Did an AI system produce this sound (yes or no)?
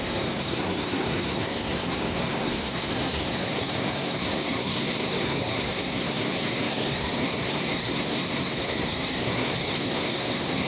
yes